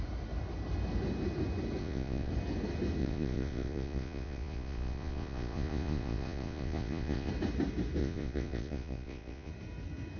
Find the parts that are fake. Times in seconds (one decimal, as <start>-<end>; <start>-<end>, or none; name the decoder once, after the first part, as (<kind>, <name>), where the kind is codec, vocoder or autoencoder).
1.8-2.3 (vocoder, Vocos); 3.0-7.3; 8.0-9.5